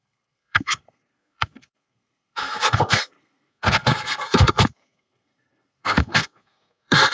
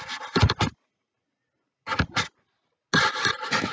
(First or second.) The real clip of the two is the second